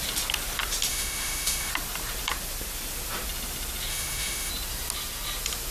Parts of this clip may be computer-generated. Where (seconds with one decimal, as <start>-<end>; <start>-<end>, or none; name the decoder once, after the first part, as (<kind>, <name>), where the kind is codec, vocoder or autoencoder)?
0.9-1.7 (autoencoder, DAC-VAE); 3.9-4.5